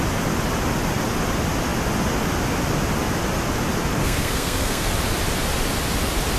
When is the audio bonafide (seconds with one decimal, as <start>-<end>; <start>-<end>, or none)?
0.0-4.0; 4.9-6.4